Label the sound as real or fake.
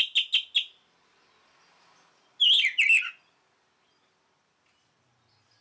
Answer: real